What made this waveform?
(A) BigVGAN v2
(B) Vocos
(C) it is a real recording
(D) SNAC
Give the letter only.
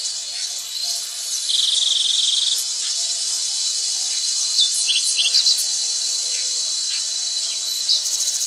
C